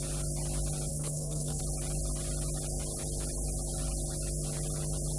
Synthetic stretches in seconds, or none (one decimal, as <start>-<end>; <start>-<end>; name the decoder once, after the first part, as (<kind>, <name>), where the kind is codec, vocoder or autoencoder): 0.9-1.6 (codec, SNAC)